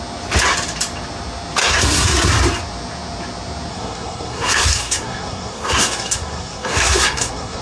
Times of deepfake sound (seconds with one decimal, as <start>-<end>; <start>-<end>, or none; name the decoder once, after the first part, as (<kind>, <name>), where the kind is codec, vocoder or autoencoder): 1.6-2.3 (codec, SNAC); 3.7-7.6